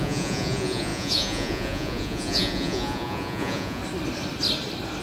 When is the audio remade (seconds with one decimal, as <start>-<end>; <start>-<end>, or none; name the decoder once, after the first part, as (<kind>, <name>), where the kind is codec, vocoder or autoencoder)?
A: 0.0-3.8 (vocoder, Vocos)